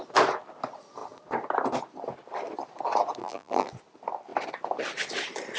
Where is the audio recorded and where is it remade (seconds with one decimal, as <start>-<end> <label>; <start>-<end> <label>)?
0.0-3.2 recorded; 3.2-3.7 remade; 3.7-5.6 recorded